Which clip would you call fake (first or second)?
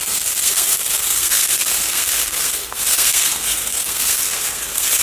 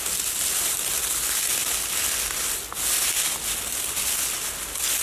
first